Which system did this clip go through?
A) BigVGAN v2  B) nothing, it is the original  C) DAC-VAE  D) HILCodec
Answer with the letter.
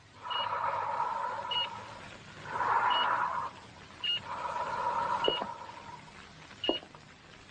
B